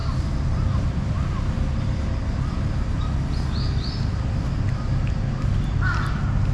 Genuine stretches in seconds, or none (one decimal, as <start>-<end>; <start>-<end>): 0.0-6.5